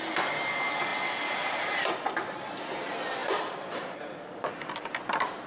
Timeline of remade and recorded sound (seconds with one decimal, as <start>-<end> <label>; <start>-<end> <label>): 0.0-3.2 recorded; 3.2-5.0 remade; 5.0-5.5 recorded